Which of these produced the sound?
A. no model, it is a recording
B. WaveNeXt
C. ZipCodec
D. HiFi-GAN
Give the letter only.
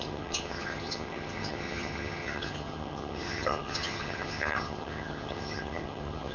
D